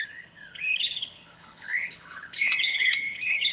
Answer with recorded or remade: remade